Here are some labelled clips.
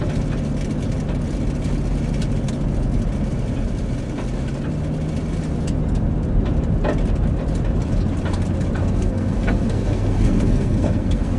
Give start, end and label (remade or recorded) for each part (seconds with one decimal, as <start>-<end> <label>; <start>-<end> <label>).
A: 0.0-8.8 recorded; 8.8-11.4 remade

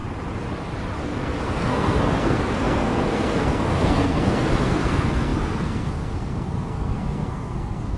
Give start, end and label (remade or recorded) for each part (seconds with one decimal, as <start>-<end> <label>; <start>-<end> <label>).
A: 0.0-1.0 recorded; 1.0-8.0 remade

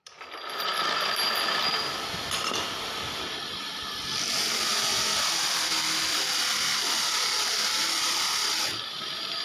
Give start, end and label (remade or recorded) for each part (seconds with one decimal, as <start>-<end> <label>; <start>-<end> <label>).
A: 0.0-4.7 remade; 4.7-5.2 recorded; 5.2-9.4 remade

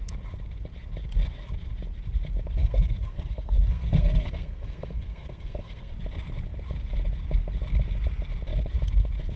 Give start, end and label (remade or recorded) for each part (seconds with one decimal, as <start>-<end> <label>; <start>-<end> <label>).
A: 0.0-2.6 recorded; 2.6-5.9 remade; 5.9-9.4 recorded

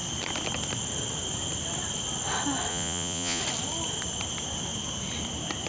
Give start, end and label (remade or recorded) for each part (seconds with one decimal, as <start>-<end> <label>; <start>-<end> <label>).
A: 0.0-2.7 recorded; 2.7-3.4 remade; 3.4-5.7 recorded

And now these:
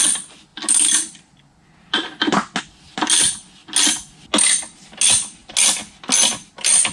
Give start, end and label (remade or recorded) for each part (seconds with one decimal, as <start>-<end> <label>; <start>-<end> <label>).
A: 0.0-6.9 recorded

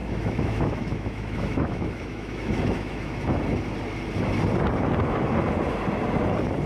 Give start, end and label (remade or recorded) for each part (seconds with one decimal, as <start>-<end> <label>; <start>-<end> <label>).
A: 0.0-3.2 remade; 3.2-6.7 recorded

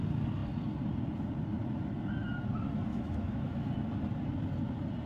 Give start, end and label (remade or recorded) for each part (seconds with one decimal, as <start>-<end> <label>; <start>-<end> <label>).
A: 0.0-2.9 recorded; 2.9-3.7 remade; 3.7-5.1 recorded